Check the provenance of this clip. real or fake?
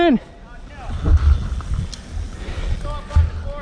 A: real